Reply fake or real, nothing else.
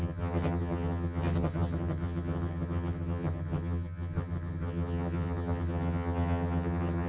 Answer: fake